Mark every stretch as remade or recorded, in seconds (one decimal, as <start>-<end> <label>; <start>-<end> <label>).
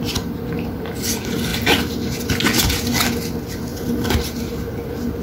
0.0-3.7 recorded; 3.7-4.4 remade; 4.4-5.2 recorded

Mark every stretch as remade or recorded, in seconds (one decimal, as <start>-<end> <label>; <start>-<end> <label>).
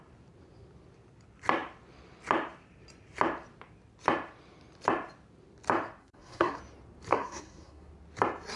0.0-6.0 recorded; 6.0-6.6 remade; 6.6-7.1 recorded; 7.1-7.9 remade; 7.9-8.6 recorded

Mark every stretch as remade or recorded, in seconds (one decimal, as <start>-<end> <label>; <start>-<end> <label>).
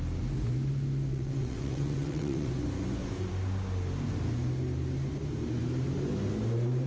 0.0-1.1 recorded; 1.1-2.5 remade; 2.5-6.9 recorded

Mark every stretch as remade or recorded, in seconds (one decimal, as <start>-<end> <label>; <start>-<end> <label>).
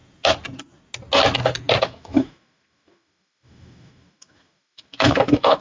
0.0-1.8 recorded; 1.8-5.6 remade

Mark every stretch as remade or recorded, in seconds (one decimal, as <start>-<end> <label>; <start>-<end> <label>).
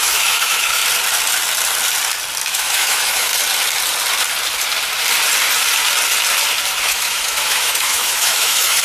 0.0-0.8 remade; 0.8-2.5 recorded; 2.5-3.3 remade; 3.3-6.8 recorded; 6.8-8.8 remade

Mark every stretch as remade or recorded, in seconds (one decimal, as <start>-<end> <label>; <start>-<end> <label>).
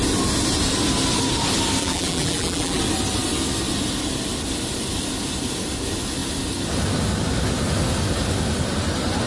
0.0-1.8 recorded; 1.8-2.8 remade; 2.8-9.3 recorded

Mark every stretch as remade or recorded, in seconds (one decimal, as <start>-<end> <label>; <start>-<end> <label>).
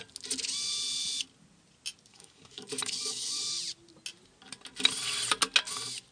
0.0-2.1 recorded; 2.1-3.4 remade; 3.4-6.1 recorded